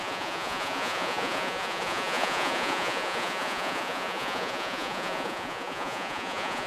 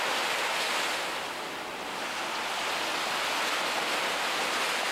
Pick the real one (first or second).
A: second